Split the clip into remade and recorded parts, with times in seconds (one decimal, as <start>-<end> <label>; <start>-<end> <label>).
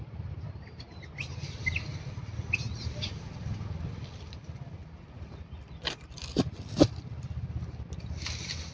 0.0-8.7 recorded